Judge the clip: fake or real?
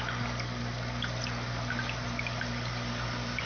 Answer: real